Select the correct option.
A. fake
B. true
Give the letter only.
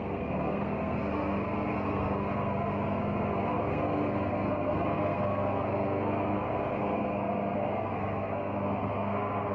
A